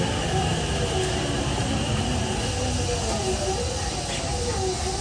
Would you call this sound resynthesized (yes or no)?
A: no